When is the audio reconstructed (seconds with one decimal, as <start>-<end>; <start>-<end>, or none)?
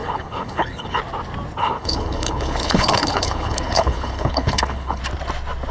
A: 0.0-1.0; 1.6-5.0